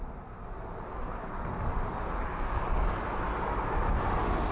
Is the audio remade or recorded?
recorded